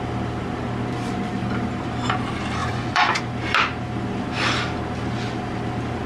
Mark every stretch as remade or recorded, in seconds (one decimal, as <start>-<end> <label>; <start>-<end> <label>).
0.0-2.6 recorded; 2.6-3.2 remade; 3.2-6.1 recorded